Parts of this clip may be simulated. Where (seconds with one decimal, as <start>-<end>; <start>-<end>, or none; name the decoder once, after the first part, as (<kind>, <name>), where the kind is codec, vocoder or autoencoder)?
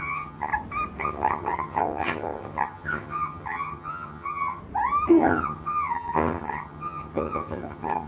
0.0-0.5 (vocoder, HiFi-GAN); 1.0-4.6; 5.1-8.1